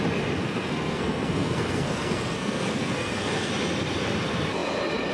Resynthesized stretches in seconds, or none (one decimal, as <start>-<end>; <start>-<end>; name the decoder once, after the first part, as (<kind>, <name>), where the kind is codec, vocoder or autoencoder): 0.4-3.5 (codec, SNAC)